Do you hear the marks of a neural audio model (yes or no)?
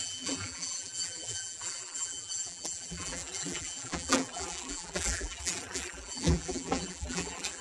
yes